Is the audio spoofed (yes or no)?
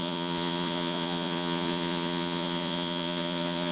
yes